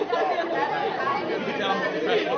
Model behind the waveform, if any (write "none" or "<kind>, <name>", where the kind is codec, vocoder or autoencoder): none